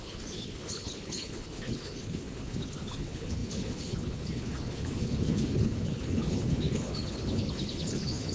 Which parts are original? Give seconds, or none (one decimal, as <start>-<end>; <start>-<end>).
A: none